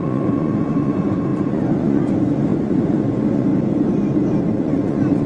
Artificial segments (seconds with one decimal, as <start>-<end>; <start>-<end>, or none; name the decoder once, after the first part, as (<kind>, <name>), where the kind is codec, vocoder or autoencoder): 0.0-3.5 (vocoder, Vocos); 4.4-5.3